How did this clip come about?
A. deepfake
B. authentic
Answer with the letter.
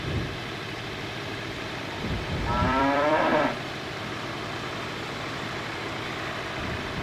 A